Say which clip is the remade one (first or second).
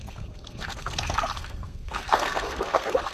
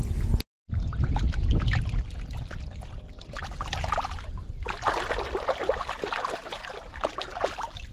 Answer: first